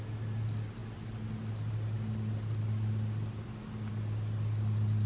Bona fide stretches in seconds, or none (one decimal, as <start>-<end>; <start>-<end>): 0.0-5.1